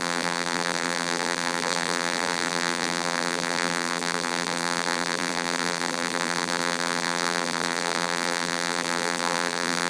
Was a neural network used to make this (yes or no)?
yes